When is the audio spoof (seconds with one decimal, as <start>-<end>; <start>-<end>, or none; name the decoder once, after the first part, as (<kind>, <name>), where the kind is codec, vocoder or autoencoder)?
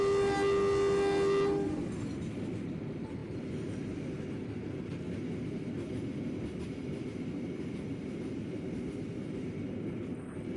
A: none